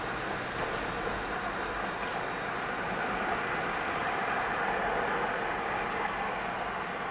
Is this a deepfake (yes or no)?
no